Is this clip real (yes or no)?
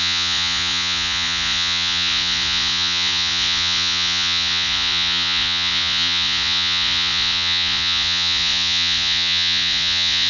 no